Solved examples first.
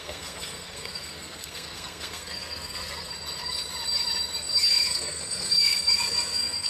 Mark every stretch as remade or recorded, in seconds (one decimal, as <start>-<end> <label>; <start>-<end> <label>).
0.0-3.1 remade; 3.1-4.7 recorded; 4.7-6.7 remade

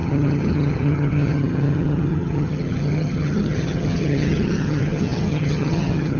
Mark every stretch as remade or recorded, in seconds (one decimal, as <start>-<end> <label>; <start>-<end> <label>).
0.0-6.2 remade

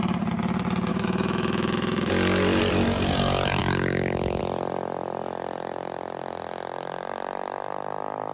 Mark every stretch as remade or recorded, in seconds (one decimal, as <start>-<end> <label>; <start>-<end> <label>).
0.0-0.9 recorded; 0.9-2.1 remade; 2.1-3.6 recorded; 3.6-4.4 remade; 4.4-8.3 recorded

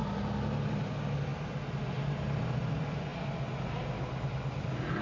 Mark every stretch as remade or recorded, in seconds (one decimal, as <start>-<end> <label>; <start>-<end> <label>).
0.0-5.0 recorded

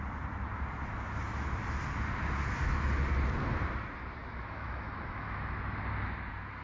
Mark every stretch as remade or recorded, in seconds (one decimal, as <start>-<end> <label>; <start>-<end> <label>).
0.0-4.2 recorded; 4.2-5.8 remade; 5.8-6.6 recorded

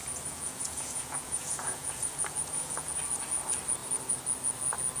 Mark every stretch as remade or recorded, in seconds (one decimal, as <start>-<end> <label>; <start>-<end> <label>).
0.0-3.0 remade; 3.0-5.0 recorded